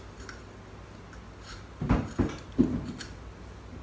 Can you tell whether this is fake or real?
real